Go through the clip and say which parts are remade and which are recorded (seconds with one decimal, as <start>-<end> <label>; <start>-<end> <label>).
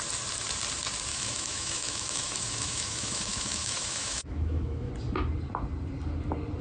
0.0-1.1 recorded; 1.1-4.9 remade; 4.9-6.6 recorded